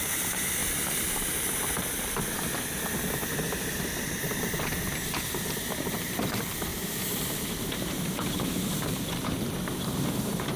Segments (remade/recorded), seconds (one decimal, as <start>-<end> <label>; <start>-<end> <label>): 0.0-0.6 remade; 0.6-5.9 recorded; 5.9-6.7 remade; 6.7-7.3 recorded; 7.3-10.6 remade